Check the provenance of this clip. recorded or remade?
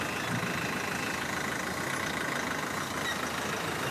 recorded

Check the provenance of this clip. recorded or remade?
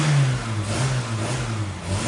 recorded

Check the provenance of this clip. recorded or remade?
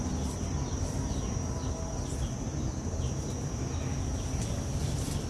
recorded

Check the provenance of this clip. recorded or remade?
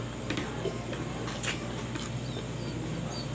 recorded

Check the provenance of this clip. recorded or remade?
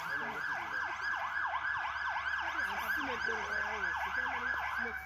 recorded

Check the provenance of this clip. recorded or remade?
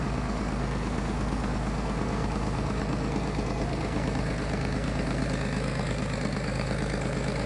remade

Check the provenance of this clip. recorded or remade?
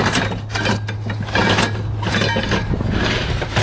recorded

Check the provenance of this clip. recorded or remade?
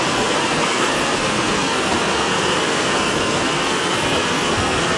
remade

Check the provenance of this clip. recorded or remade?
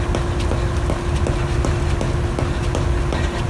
recorded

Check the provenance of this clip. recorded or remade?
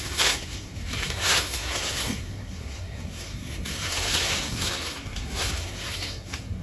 remade